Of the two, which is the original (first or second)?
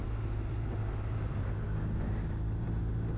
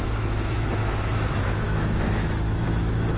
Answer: first